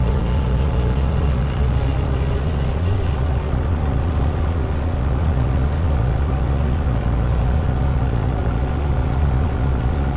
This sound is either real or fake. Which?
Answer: fake